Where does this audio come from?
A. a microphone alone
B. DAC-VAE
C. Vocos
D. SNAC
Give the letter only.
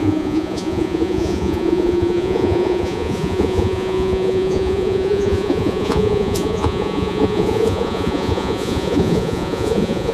C